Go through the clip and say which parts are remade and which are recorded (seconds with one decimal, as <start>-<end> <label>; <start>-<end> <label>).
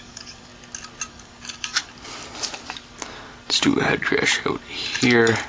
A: 0.0-0.5 remade; 0.5-1.1 recorded; 1.1-1.9 remade; 1.9-5.5 recorded